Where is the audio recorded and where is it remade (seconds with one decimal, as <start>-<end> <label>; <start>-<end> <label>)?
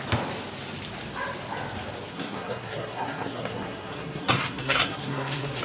0.0-2.1 recorded; 2.1-5.6 remade